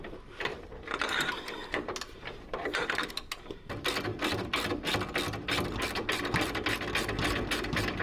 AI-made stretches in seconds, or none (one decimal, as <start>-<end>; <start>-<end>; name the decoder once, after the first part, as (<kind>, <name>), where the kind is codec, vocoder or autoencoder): 0.5-3.1 (vocoder, BigVGAN v2)